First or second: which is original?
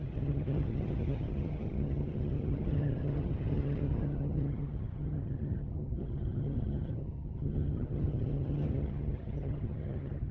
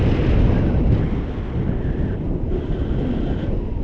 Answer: second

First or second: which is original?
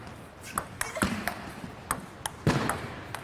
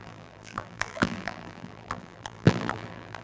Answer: first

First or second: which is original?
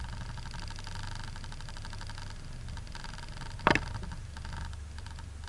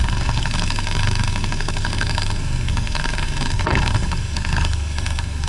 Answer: first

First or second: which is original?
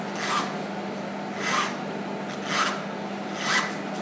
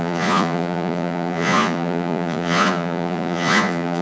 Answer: first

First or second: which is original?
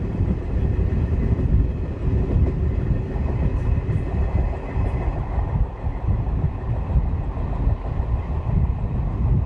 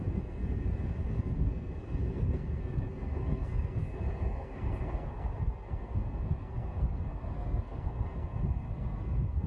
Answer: first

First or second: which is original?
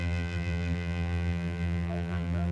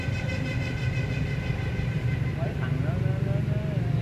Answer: second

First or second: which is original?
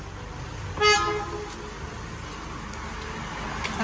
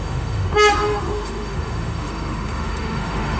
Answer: first